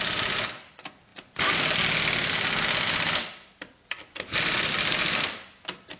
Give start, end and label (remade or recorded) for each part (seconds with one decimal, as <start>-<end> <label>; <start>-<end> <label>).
0.0-6.0 recorded